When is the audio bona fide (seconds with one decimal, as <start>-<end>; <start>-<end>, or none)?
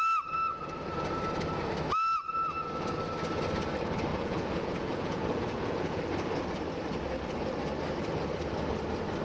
0.0-4.1; 6.0-9.2